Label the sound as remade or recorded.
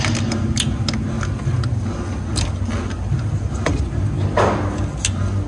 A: recorded